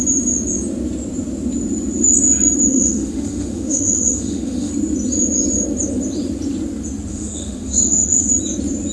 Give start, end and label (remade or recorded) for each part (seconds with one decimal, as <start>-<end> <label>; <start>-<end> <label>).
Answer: 0.0-2.7 recorded; 2.7-4.7 remade; 4.7-7.1 recorded; 7.1-8.3 remade; 8.3-8.9 recorded